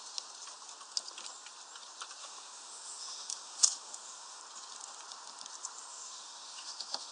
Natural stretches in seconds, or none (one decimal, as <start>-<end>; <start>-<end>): 0.0-2.2; 4.4-5.9